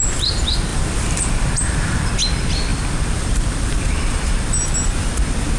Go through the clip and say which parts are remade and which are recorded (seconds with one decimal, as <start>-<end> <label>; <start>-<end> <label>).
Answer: 0.0-0.7 recorded; 0.7-2.1 remade; 2.1-2.7 recorded; 2.7-4.5 remade; 4.5-5.6 recorded